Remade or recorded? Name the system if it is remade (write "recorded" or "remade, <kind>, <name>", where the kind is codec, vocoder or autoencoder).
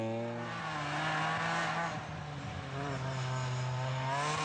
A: recorded